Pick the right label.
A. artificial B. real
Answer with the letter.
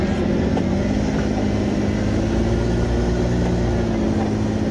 B